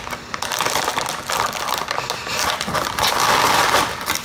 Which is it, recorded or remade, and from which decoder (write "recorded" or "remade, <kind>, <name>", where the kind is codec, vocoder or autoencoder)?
recorded